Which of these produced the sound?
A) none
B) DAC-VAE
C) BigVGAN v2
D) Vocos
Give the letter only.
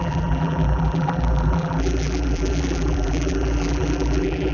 C